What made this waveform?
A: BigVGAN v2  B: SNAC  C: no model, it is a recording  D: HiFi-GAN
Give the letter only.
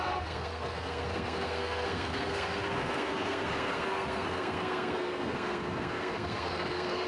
B